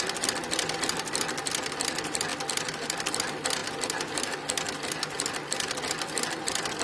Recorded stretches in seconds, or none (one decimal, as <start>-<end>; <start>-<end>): 0.0-6.8